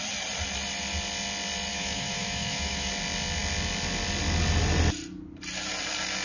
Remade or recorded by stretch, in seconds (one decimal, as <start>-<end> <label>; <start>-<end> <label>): 0.0-1.7 recorded; 1.7-2.9 remade; 2.9-6.2 recorded

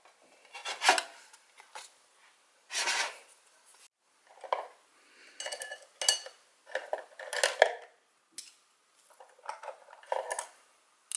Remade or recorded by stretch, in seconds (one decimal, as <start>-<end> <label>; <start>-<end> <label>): 0.0-11.2 recorded